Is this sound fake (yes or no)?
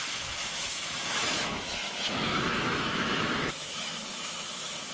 yes